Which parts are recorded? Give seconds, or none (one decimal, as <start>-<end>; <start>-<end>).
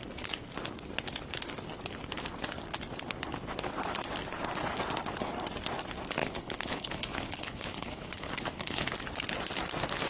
0.0-6.2; 8.8-10.1